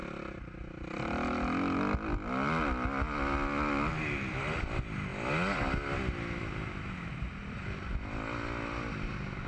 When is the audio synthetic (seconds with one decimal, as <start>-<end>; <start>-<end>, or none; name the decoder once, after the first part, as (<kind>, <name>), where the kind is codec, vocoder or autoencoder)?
none